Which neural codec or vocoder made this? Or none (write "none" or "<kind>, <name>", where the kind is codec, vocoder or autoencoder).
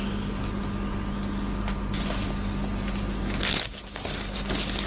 none